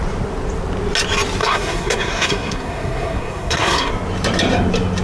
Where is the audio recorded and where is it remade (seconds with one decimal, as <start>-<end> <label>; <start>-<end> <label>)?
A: 0.0-1.4 recorded; 1.4-3.9 remade; 3.9-5.0 recorded